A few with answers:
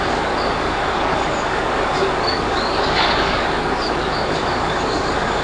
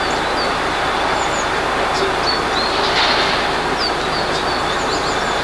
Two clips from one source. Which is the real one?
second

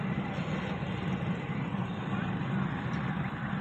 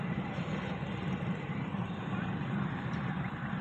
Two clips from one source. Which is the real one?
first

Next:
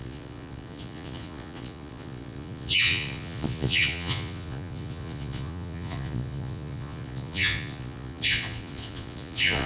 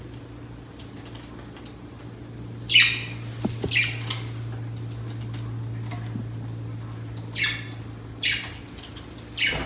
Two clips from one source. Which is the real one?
second